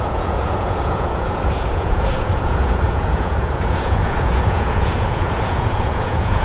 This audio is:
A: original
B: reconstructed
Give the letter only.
B